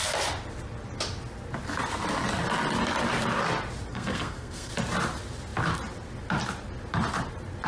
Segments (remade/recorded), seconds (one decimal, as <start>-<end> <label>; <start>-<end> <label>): 0.0-3.9 recorded; 3.9-4.7 remade; 4.7-7.7 recorded